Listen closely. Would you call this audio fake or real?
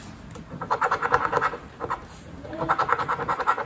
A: real